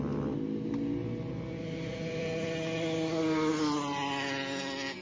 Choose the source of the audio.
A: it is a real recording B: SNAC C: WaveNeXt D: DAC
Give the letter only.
A